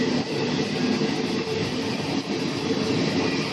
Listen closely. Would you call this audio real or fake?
real